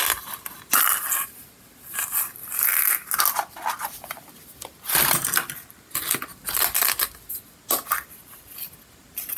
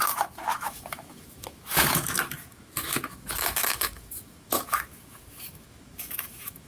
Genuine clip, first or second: first